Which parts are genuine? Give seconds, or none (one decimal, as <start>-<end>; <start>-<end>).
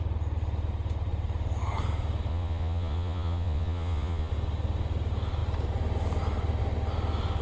0.0-2.3; 4.3-7.4